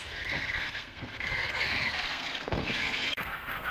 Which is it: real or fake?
fake